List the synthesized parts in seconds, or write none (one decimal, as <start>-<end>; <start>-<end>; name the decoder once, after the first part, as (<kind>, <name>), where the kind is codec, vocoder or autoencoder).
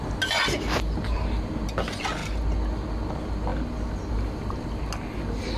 none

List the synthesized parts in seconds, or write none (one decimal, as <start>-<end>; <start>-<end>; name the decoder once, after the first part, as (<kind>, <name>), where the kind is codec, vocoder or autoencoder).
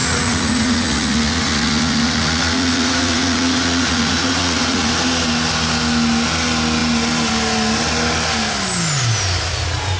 0.0-4.9 (vocoder, Vocos)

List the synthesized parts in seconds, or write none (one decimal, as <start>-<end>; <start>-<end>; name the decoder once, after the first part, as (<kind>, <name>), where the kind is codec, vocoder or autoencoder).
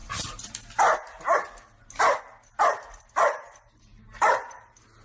none